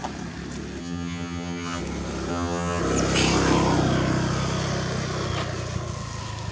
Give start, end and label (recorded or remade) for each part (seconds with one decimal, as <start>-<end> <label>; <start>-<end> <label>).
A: 0.0-0.8 recorded; 0.8-1.8 remade; 1.8-2.3 recorded; 2.3-2.8 remade; 2.8-6.5 recorded